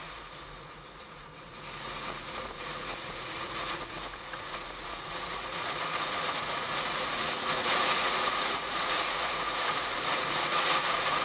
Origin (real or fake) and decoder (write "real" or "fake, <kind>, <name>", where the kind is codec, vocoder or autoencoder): fake, vocoder, Vocos